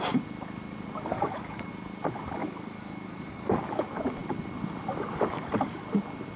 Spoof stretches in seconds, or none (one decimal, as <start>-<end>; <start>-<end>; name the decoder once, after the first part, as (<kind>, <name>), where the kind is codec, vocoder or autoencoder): 1.1-1.7 (codec, DAC); 2.4-3.8